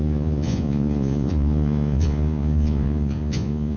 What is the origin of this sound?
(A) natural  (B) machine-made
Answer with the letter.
B